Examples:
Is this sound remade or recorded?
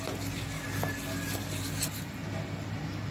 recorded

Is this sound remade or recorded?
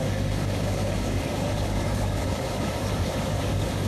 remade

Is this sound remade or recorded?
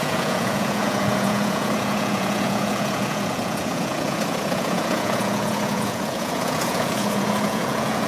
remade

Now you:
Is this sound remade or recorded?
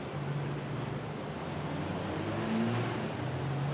recorded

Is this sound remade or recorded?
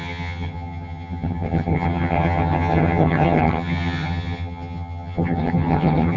remade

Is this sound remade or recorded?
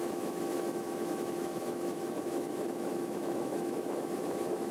remade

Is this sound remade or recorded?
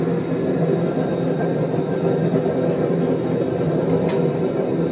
recorded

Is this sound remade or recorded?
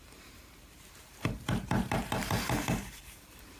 remade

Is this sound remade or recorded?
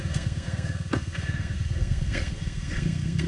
remade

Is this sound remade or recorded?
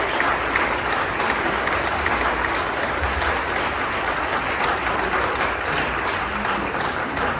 recorded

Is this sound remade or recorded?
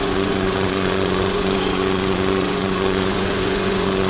remade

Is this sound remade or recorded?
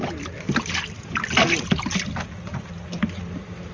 recorded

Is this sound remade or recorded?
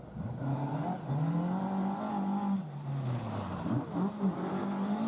recorded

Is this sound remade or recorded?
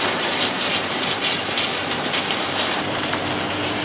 remade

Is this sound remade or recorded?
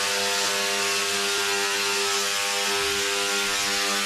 recorded